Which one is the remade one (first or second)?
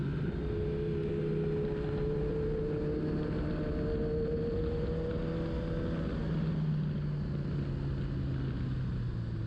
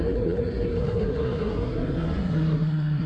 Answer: second